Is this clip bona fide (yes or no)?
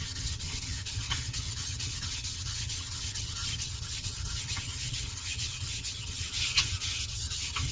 no